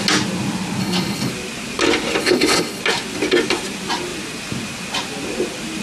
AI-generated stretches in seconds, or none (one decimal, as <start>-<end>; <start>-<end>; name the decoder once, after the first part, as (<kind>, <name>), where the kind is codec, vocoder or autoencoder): 0.8-1.3 (codec, HILCodec); 2.2-2.8